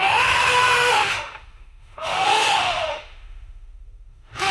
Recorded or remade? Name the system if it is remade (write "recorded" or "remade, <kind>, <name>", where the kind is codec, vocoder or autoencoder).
remade, autoencoder, DAC-VAE